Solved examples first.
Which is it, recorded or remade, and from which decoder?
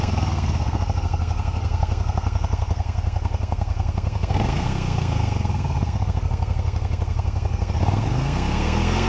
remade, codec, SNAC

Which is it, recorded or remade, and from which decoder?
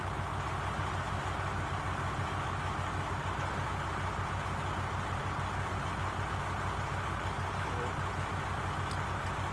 recorded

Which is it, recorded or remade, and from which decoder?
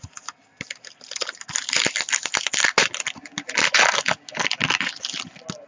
recorded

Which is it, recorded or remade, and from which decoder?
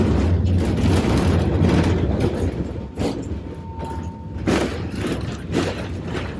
recorded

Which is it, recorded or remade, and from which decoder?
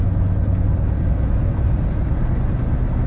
recorded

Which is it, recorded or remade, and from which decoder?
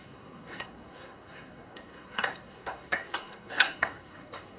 remade, codec, SNAC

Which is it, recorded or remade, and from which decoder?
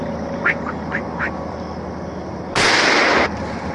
recorded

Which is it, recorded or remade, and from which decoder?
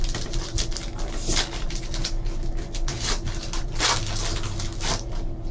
recorded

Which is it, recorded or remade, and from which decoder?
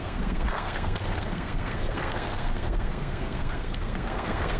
remade, codec, SNAC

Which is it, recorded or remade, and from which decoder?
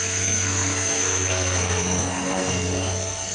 remade, codec, SNAC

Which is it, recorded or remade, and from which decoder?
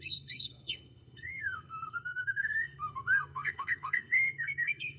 remade, codec, SNAC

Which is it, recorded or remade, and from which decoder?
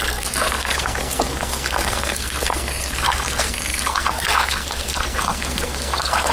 remade, codec, SNAC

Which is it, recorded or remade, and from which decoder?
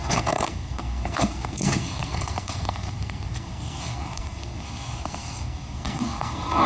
remade, codec, SNAC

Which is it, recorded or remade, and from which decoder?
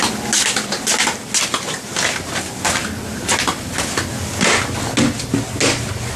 recorded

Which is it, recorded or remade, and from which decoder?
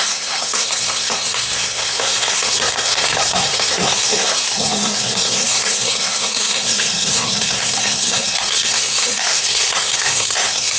remade, codec, SNAC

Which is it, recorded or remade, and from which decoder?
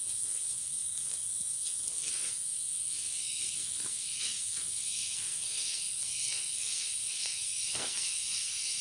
remade, codec, SNAC